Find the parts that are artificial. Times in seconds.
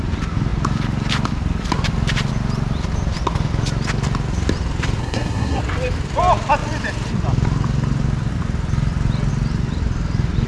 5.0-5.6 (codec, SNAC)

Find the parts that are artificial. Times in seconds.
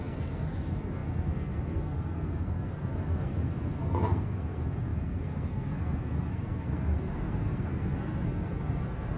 0.0-9.2 (codec, SNAC)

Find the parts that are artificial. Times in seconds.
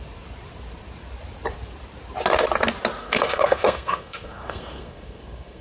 3.0-5.6 (codec, SNAC)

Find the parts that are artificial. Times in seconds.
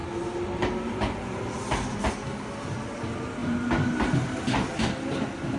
none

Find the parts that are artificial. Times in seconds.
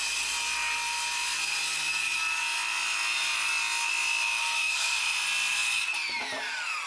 4.4-5.0 (codec, SNAC)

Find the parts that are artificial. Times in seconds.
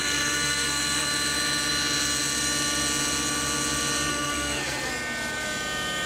0.0-1.1 (codec, SNAC); 4.1-4.9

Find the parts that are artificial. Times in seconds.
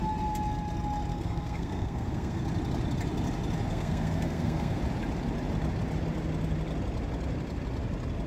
1.1-2.4 (codec, SNAC); 3.7-4.8